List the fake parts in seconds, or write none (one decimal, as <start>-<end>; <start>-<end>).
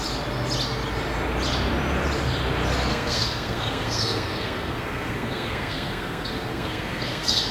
2.9-7.5